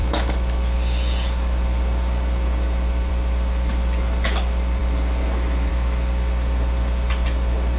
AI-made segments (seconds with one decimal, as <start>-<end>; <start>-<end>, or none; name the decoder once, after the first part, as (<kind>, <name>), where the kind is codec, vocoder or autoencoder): none